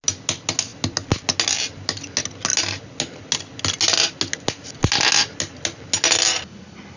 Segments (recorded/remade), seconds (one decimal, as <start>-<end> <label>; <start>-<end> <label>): 0.0-7.0 recorded